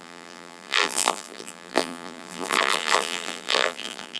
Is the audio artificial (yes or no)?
yes